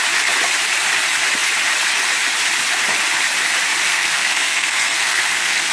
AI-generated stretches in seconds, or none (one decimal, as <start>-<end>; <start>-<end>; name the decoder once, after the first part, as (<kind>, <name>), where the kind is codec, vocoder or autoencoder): 3.9-5.7 (codec, SNAC)